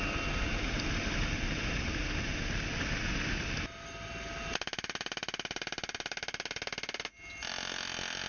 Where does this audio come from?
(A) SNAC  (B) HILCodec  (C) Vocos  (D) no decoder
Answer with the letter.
D